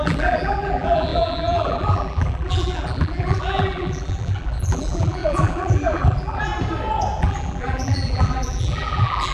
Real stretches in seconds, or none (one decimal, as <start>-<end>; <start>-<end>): 6.5-7.2